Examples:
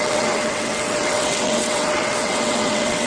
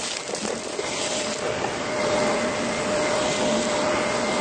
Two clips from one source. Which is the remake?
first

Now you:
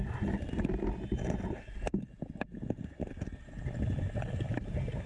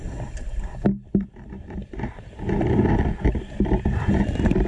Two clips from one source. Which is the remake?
second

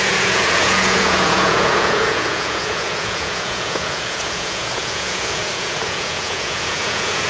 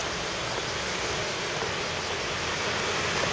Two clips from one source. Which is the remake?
first